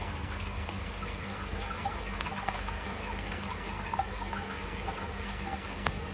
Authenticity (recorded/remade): remade